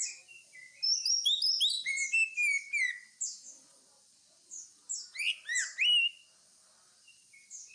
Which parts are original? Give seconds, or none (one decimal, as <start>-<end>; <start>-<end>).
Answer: 0.0-7.7